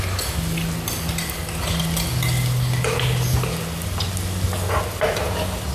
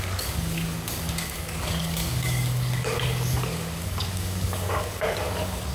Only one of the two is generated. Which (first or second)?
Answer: second